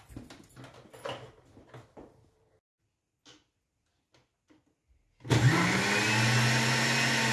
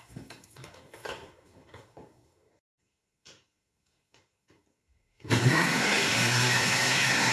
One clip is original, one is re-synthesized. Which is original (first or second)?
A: first